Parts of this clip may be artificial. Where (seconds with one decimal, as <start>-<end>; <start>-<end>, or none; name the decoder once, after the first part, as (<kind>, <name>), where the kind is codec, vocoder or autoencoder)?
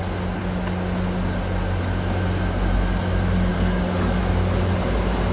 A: 3.5-4.2 (codec, DAC)